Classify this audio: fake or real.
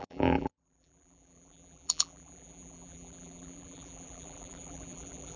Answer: fake